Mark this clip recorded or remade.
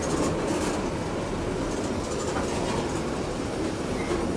recorded